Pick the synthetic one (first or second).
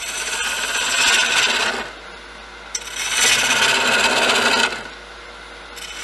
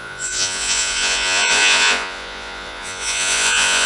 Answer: second